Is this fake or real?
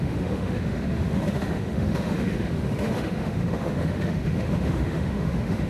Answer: fake